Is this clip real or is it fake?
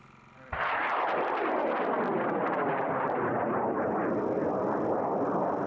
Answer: real